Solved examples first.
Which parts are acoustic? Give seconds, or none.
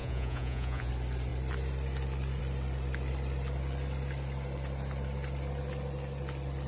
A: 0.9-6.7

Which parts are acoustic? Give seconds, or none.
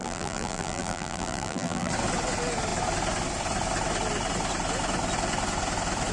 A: 1.9-6.1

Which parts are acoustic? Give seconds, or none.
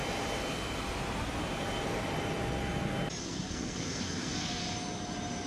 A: 0.0-3.2; 4.6-5.5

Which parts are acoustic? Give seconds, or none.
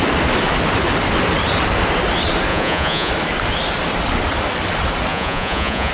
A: 0.0-2.5; 3.1-5.1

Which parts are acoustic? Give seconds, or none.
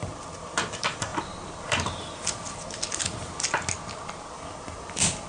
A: 0.0-0.7; 1.1-4.3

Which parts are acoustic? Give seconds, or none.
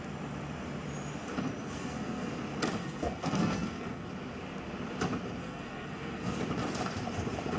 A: 0.0-1.6; 2.3-2.8; 4.1-5.4; 6.3-7.6